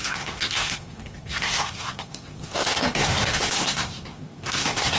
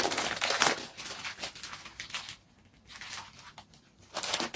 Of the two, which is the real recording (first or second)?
second